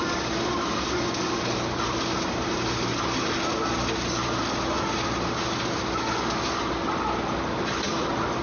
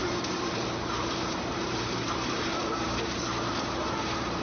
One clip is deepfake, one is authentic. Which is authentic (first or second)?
first